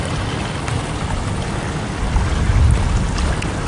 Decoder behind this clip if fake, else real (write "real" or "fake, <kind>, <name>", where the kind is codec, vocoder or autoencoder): real